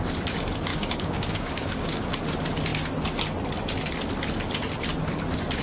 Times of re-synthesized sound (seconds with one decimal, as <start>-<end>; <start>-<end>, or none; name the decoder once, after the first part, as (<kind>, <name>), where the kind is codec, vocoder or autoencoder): 0.7-2.1 (codec, DAC)